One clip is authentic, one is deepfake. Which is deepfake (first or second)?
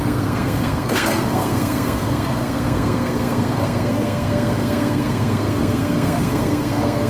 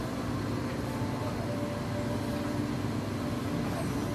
first